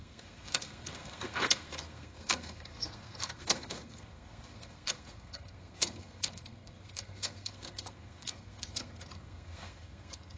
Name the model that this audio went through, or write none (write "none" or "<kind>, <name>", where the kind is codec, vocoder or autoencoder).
codec, SNAC